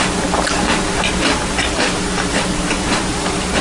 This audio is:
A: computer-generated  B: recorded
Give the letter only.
B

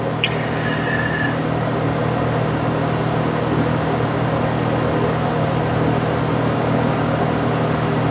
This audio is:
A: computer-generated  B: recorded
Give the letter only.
B